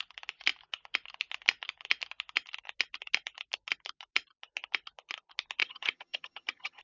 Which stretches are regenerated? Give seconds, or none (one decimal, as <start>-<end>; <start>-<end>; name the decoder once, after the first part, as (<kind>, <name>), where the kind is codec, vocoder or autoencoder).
5.6-6.8 (vocoder, HiFi-GAN)